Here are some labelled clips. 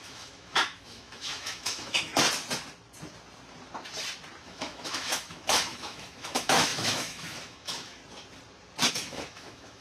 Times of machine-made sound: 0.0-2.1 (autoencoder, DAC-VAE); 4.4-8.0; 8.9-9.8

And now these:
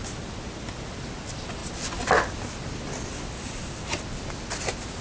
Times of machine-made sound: none

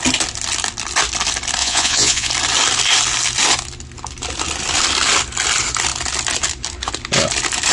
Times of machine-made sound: 1.6-2.3 (vocoder, Vocos)